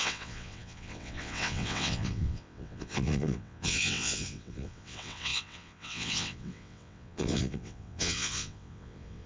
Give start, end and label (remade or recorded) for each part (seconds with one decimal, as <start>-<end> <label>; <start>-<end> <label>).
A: 0.0-9.3 remade